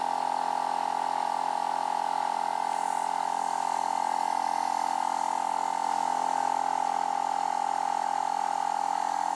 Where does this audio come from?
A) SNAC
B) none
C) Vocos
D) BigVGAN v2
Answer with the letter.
B